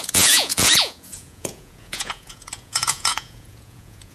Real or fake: fake